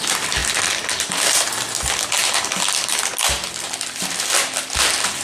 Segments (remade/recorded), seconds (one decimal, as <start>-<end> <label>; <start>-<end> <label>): 0.0-5.2 recorded